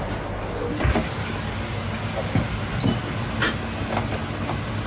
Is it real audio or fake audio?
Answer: real